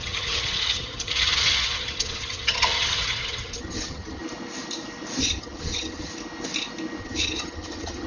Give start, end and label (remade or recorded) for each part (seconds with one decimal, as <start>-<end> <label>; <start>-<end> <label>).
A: 0.0-4.2 remade; 4.2-5.2 recorded; 5.2-6.1 remade; 6.1-7.0 recorded; 7.0-8.1 remade